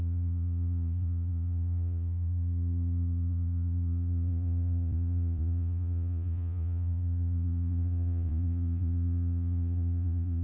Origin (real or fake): fake